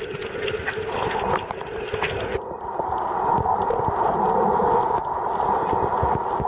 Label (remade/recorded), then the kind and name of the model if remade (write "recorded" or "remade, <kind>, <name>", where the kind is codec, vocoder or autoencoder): recorded